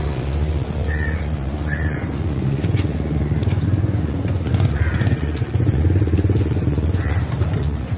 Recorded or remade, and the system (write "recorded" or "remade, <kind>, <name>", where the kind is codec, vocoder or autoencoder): remade, vocoder, Vocos